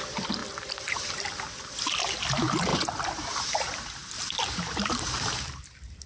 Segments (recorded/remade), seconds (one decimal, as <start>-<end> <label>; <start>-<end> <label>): 0.0-0.4 recorded; 0.4-1.1 remade; 1.1-2.7 recorded; 2.7-6.1 remade